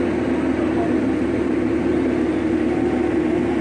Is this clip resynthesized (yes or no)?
no